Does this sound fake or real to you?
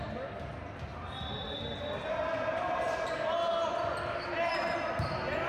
real